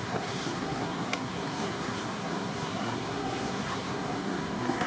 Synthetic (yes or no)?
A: yes